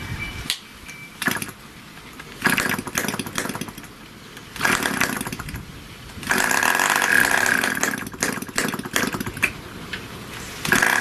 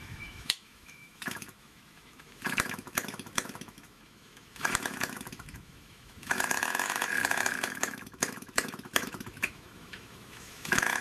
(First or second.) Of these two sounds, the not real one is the second